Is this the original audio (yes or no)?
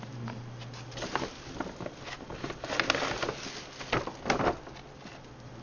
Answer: yes